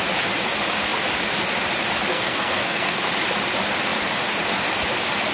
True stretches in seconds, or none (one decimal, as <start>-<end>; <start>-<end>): 0.0-2.1; 3.0-5.3